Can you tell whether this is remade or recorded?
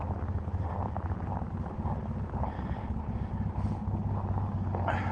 recorded